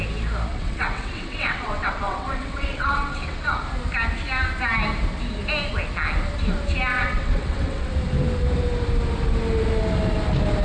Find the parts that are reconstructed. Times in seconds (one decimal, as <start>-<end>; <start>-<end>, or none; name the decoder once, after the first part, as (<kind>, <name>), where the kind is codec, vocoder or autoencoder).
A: 0.5-3.6 (vocoder, WaveNeXt); 6.9-7.9